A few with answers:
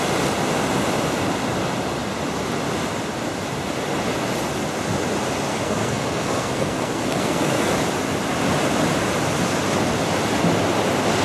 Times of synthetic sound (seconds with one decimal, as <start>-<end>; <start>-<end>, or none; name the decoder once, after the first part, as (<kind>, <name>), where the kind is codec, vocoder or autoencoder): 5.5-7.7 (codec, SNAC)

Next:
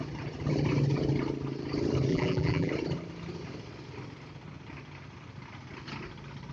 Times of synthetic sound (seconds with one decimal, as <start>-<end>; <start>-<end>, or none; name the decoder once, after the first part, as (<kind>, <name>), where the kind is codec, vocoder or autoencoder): 2.1-2.7 (vocoder, BigVGAN v2)

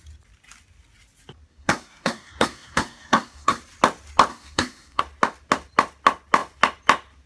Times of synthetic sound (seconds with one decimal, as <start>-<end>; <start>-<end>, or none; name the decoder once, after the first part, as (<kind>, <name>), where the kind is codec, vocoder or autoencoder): 1.5-3.6 (codec, SNAC); 4.3-5.0